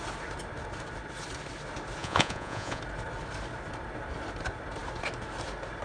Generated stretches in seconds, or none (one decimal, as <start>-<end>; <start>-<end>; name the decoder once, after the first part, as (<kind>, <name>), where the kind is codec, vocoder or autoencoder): 2.0-2.8 (vocoder, Vocos)

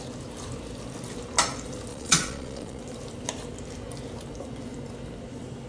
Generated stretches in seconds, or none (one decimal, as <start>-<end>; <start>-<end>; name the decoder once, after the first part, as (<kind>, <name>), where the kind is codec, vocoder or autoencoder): 1.9-2.8 (vocoder, Vocos)

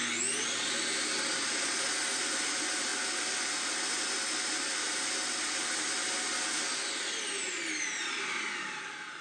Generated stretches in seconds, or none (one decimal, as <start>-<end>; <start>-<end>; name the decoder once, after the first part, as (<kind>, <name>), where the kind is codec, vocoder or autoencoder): none

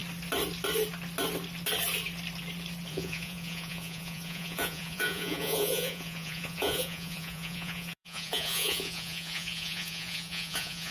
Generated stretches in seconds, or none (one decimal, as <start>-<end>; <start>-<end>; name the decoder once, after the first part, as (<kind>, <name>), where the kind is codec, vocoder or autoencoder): 2.9-10.9 (vocoder, Vocos)

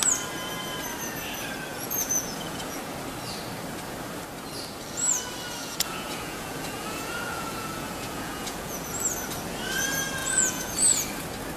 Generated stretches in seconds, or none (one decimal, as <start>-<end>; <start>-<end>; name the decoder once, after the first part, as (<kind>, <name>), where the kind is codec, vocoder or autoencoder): 1.7-2.8 (vocoder, Vocos); 5.6-8.9; 10.2-10.7

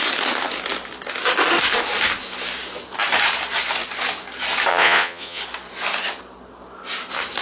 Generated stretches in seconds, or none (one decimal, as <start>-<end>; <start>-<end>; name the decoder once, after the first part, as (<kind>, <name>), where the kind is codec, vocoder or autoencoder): 4.7-5.4 (vocoder, Vocos)

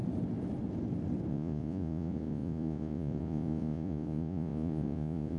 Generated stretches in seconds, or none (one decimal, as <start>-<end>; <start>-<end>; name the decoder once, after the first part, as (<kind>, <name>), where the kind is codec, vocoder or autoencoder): 1.3-5.4 (vocoder, Vocos)

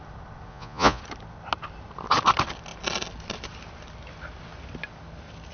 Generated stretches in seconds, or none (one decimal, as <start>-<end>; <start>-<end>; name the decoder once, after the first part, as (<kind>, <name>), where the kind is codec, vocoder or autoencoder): 0.5-1.0 (vocoder, Vocos)